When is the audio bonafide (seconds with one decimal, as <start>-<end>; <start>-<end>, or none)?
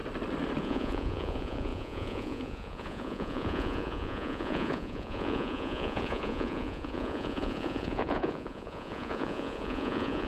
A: 0.0-0.6